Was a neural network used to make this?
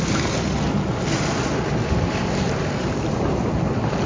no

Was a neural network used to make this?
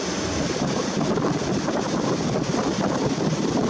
no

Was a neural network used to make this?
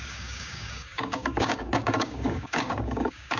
yes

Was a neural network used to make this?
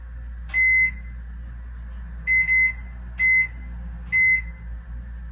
no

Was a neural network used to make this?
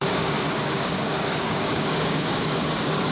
yes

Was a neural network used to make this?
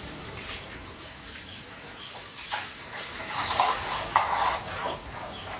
yes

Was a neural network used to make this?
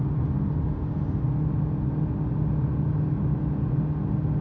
no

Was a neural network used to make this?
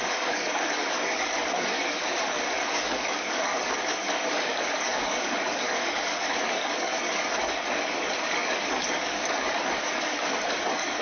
yes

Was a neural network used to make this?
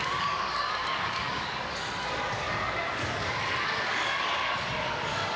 yes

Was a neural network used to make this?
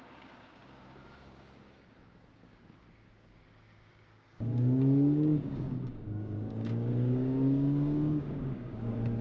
yes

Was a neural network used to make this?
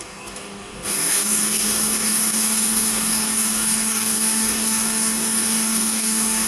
yes